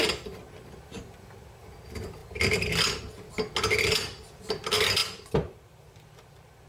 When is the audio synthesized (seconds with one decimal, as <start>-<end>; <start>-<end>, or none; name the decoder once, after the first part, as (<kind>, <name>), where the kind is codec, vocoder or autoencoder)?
5.0-6.7 (vocoder, BigVGAN v2)